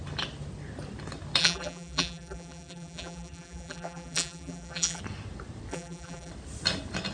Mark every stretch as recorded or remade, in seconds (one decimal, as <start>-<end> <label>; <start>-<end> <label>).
0.0-1.4 recorded; 1.4-5.0 remade; 5.0-5.7 recorded; 5.7-6.3 remade; 6.3-7.1 recorded